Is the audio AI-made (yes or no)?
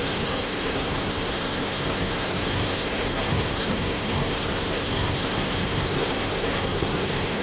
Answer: yes